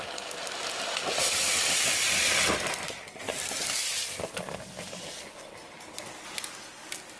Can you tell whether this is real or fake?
real